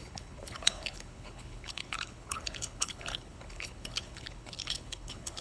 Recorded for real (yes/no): no